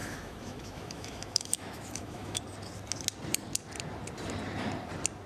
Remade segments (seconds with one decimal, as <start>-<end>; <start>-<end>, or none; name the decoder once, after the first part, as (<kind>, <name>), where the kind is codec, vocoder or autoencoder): 0.0-2.4 (autoencoder, DAC-VAE)